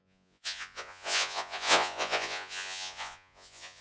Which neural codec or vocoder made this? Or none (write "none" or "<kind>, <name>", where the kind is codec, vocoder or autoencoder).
vocoder, Vocos